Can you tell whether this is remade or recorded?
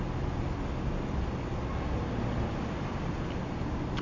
recorded